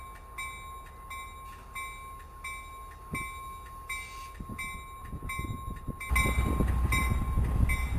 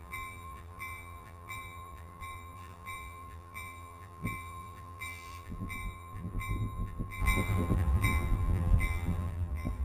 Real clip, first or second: first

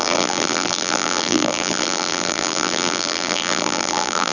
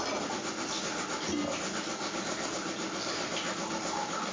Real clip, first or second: second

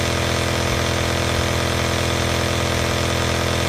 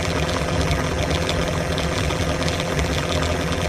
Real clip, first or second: first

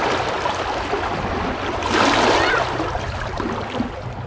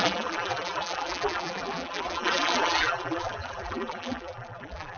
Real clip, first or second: first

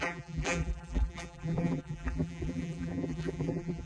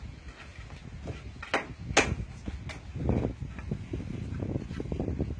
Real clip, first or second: second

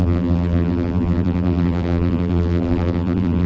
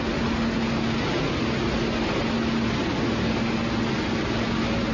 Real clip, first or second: second